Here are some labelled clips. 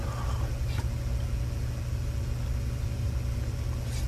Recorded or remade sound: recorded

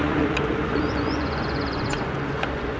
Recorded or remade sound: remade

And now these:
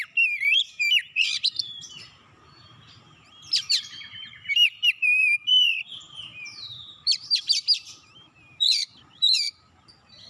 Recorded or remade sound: remade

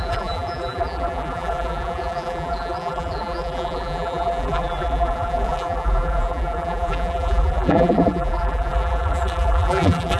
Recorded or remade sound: remade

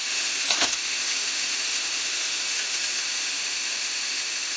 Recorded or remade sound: remade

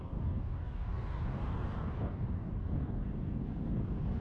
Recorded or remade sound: remade